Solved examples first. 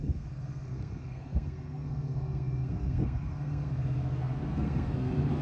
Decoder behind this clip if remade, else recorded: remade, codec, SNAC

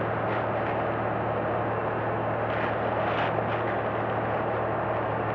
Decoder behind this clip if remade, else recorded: recorded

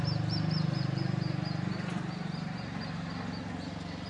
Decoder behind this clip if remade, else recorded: recorded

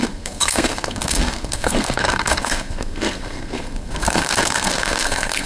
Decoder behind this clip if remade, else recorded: remade, codec, SNAC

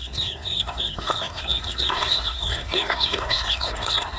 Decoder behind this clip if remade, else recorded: remade, codec, SNAC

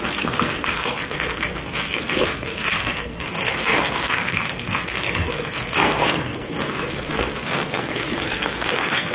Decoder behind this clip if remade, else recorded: remade, codec, SNAC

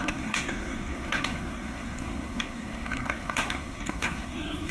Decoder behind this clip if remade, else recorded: remade, codec, SNAC